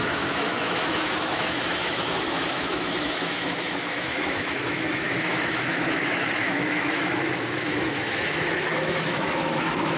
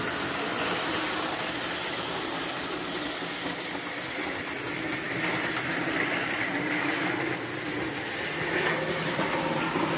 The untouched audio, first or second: second